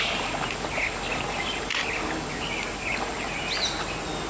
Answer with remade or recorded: recorded